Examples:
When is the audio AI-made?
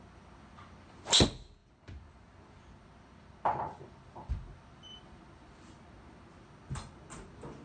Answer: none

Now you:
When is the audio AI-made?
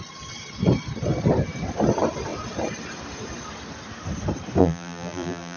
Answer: 4.6-5.6 (vocoder, BigVGAN v2)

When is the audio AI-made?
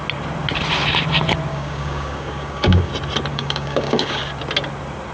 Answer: 1.5-2.9 (codec, DAC); 3.3-4.2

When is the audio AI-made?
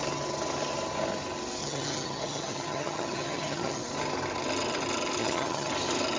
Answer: 1.6-3.8 (vocoder, HiFi-GAN); 5.2-5.7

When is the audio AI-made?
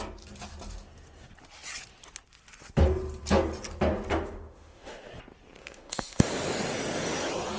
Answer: 4.1-5.1 (autoencoder, DAC-VAE); 5.6-6.3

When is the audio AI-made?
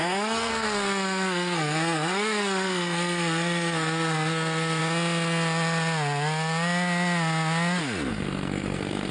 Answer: 0.0-4.8 (codec, SNAC); 8.1-9.1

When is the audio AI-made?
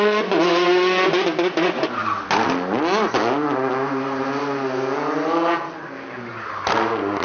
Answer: none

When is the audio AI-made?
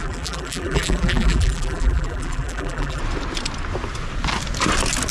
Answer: 0.0-3.0 (vocoder, BigVGAN v2)